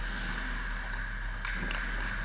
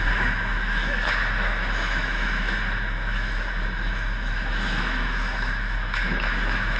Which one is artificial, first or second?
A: second